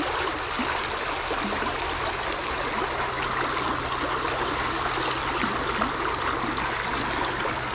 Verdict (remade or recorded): recorded